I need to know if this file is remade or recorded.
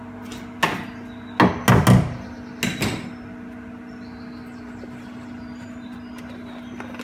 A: recorded